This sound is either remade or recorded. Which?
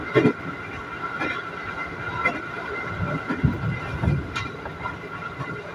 recorded